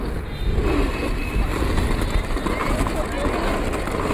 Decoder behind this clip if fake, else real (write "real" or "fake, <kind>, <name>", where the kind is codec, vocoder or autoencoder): real